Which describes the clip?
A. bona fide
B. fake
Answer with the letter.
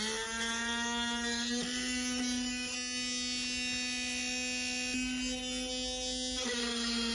A